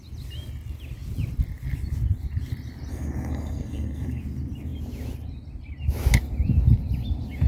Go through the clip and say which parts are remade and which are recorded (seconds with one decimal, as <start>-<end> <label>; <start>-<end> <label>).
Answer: 0.0-2.9 recorded; 2.9-4.2 remade; 4.2-7.5 recorded